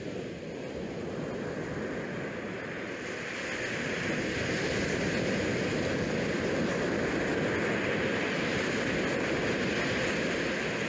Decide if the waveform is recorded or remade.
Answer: recorded